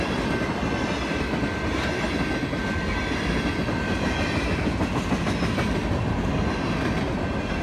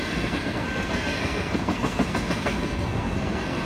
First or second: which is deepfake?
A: second